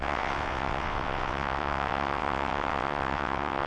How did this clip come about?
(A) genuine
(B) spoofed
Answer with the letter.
B